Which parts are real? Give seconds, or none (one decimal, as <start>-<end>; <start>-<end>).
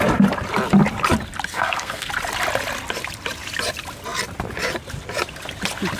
0.0-1.5; 2.1-6.0